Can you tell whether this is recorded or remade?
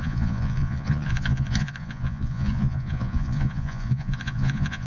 remade